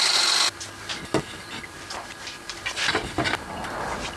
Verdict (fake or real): real